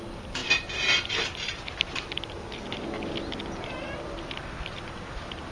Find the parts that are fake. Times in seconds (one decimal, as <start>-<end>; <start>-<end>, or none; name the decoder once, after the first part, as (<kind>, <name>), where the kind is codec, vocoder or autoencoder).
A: none